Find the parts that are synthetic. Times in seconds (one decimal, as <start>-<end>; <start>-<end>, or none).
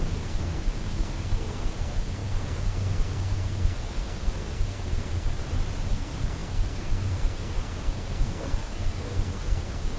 0.0-5.4; 5.9-10.0